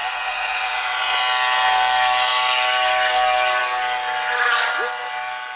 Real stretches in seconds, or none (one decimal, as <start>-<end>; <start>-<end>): 1.2-5.6